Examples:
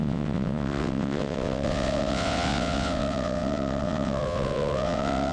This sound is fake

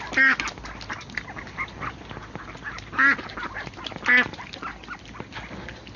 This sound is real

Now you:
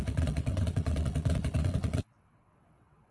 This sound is fake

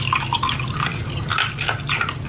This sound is real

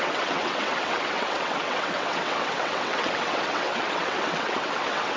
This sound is fake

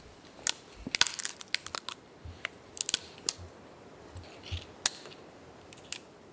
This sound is real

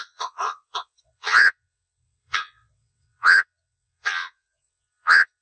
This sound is fake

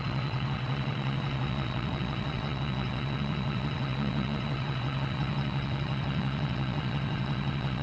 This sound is fake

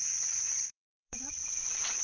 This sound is fake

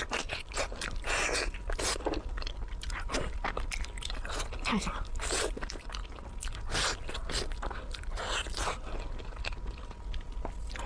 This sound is real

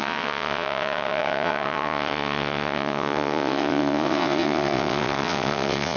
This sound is fake